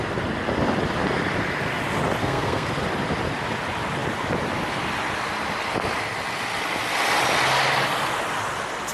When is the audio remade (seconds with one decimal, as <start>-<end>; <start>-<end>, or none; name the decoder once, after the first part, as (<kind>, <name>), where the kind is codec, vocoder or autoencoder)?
2.2-2.7 (codec, SNAC)